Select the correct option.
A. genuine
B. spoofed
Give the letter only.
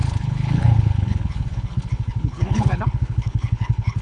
B